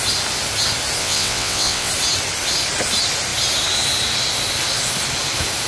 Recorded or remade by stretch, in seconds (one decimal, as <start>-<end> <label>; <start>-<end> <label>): 0.0-1.0 recorded; 1.0-1.9 remade; 1.9-5.7 recorded